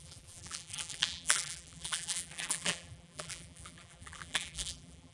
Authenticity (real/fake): fake